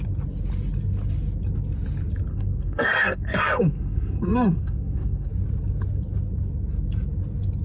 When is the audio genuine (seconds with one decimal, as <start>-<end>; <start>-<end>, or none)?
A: 0.0-2.3; 5.3-7.6